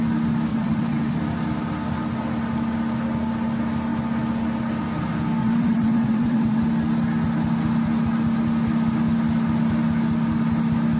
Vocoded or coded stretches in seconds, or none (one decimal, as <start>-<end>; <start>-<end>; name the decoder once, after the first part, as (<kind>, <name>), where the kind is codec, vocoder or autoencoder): 0.5-1.1 (vocoder, WaveNeXt); 5.4-6.6